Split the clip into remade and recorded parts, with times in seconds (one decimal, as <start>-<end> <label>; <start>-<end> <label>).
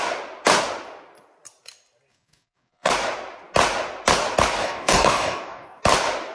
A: 0.0-2.1 recorded; 2.1-2.9 remade; 2.9-4.6 recorded; 4.6-5.8 remade; 5.8-6.3 recorded